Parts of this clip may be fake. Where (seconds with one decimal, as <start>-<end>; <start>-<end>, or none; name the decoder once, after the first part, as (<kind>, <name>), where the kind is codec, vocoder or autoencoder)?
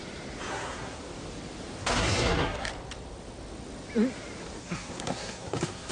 0.5-1.0 (codec, SNAC); 1.8-2.7; 4.6-5.9